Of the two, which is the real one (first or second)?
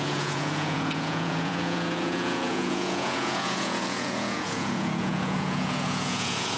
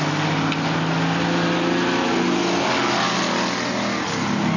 second